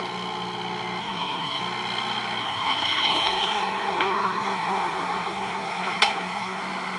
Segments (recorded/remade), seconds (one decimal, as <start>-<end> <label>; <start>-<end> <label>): 0.0-1.0 recorded; 1.0-1.6 remade; 1.6-2.4 recorded; 2.4-6.6 remade; 6.6-7.0 recorded